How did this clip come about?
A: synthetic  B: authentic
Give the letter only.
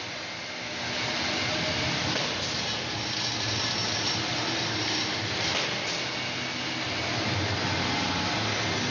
B